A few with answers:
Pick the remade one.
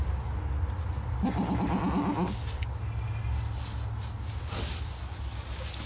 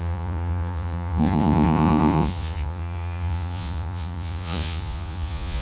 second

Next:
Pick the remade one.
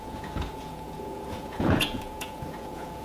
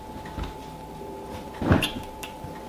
first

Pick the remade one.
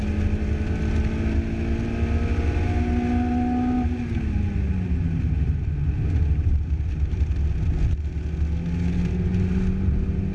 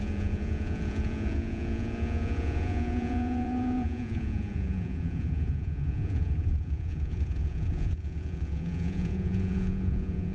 second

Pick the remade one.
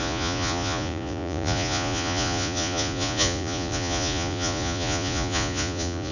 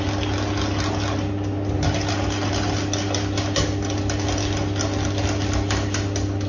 first